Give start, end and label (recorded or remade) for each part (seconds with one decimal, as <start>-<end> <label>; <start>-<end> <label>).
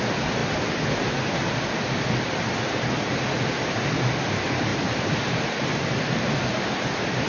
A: 0.0-0.4 recorded; 0.4-3.8 remade; 3.8-4.7 recorded; 4.7-6.2 remade; 6.2-7.3 recorded